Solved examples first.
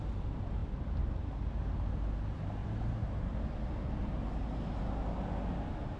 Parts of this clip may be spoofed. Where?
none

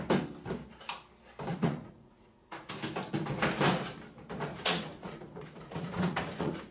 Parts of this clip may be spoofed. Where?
1.5-2.7 (vocoder, Vocos); 4.5-6.7

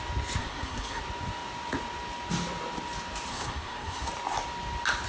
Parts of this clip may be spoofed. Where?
0.4-1.0 (codec, SNAC); 3.3-4.1

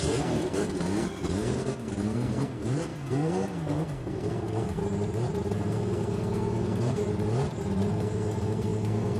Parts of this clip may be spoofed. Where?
0.0-4.8 (codec, SNAC); 5.5-7.0; 7.9-9.2

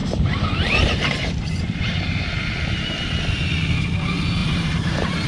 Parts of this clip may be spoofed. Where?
0.0-2.3 (vocoder, BigVGAN v2); 4.4-5.3